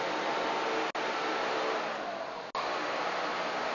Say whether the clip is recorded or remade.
recorded